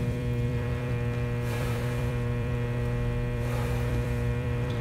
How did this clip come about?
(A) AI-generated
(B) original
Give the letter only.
A